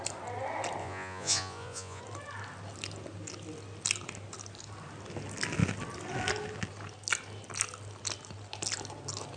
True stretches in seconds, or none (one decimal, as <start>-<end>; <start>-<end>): 0.0-0.8; 2.0-9.4

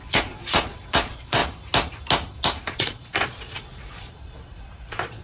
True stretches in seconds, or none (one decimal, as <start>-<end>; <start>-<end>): 1.4-2.6

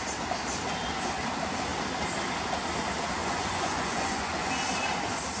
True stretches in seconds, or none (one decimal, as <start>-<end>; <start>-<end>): 0.0-3.2; 4.5-5.4

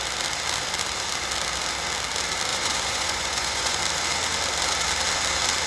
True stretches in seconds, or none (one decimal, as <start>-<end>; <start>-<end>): 0.0-2.5; 3.8-5.7

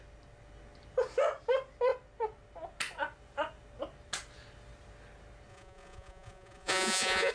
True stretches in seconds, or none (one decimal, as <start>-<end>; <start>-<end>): 0.0-5.5

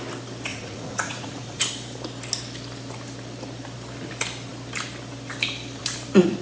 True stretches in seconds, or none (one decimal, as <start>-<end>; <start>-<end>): 0.0-0.5; 1.6-6.4

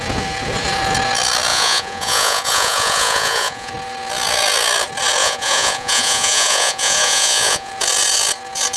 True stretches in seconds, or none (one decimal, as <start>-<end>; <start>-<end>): 0.0-1.5; 3.7-5.2; 7.7-8.8

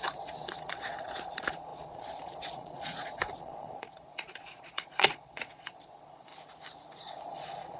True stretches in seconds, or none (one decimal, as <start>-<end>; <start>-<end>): 6.3-7.0